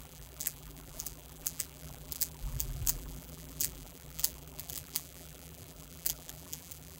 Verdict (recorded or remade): remade